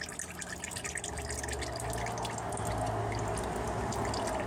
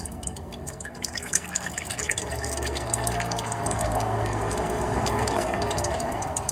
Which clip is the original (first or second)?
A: first